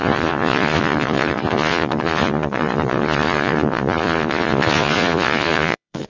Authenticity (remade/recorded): remade